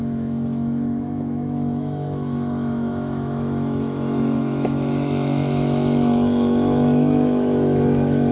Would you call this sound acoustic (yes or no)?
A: no